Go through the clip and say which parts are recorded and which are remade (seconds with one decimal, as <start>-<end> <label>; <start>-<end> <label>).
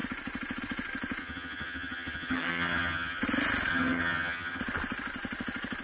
0.0-1.2 recorded; 1.2-3.2 remade; 3.2-3.7 recorded; 3.7-4.6 remade; 4.6-5.8 recorded